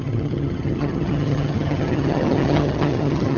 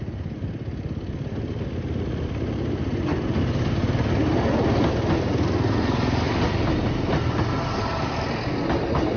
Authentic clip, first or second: second